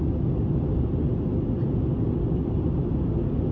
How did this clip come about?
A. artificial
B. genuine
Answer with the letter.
B